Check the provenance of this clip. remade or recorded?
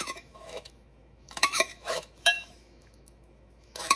remade